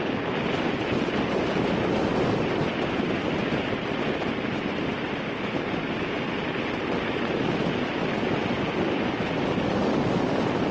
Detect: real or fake real